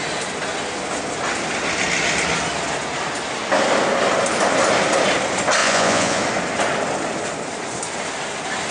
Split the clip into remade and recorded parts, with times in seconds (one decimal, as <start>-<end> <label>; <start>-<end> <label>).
0.0-5.6 recorded; 5.6-6.2 remade; 6.2-8.7 recorded